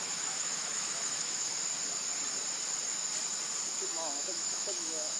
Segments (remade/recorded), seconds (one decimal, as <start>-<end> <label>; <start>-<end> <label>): 0.0-1.5 remade; 1.5-3.9 recorded; 3.9-5.2 remade